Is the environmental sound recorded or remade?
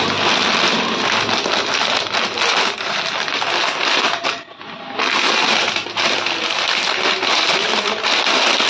recorded